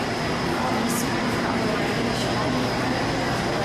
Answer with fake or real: real